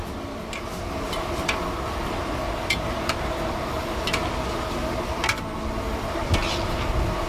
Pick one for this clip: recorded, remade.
recorded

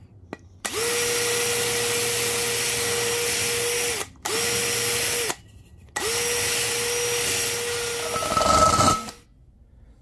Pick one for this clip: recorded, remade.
recorded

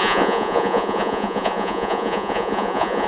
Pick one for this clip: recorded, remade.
remade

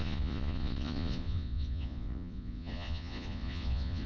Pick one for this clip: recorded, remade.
remade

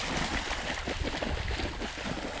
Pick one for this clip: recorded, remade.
recorded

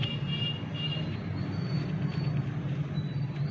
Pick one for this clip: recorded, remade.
recorded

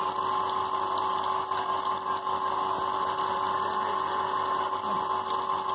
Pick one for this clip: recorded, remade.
recorded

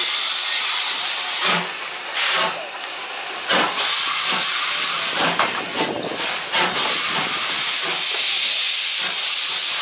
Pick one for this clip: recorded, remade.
recorded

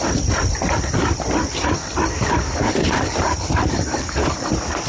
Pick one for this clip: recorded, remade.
recorded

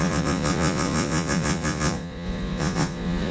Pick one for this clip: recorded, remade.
remade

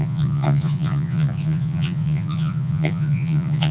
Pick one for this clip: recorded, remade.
remade